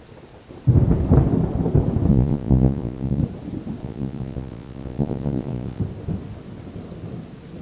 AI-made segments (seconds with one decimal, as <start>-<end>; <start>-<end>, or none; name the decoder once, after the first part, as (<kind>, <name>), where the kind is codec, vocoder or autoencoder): 2.1-3.2 (vocoder, Vocos); 3.8-5.8